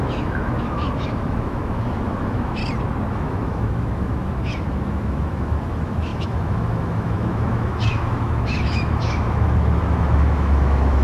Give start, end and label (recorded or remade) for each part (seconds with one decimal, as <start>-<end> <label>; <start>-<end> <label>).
0.0-2.6 remade; 2.6-3.1 recorded; 3.1-11.0 remade